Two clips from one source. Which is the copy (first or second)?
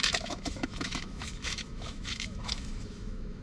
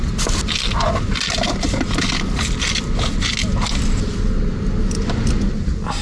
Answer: first